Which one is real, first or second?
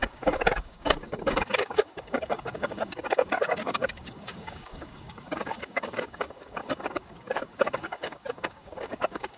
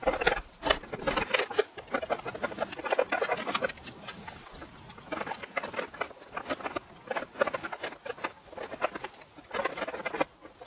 second